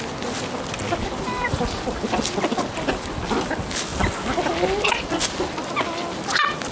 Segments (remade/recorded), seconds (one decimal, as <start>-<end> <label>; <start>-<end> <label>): 0.0-6.7 recorded